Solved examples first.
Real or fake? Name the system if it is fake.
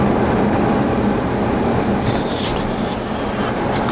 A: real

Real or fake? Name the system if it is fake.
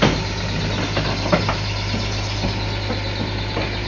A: real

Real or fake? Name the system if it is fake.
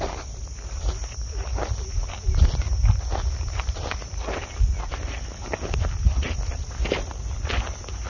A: real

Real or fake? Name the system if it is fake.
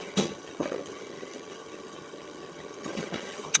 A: fake, vocoder, HiFi-GAN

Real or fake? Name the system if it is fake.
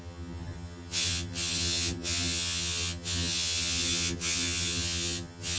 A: fake, vocoder, HiFi-GAN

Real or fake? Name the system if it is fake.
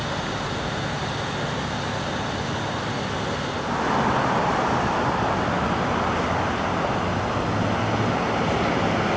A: real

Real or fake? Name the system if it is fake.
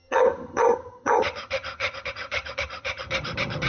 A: fake, vocoder, HiFi-GAN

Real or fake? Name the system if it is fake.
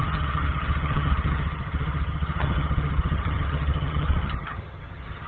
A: fake, vocoder, HiFi-GAN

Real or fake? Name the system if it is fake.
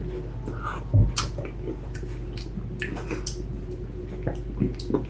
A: real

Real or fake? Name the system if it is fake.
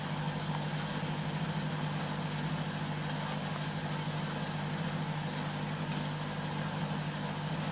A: real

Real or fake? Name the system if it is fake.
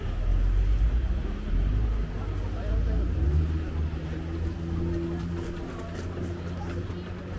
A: real